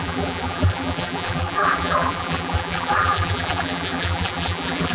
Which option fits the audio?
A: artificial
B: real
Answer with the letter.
A